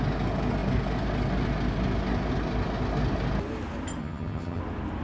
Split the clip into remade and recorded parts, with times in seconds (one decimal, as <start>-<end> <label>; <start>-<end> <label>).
0.0-4.0 recorded; 4.0-4.6 remade; 4.6-5.0 recorded